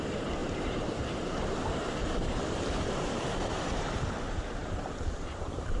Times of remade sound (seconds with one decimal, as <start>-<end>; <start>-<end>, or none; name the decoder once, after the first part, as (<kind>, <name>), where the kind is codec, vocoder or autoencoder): 0.4-3.9 (vocoder, BigVGAN v2); 4.6-5.8